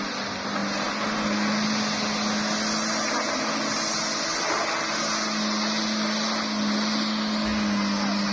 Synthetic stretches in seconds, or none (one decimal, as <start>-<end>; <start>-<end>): none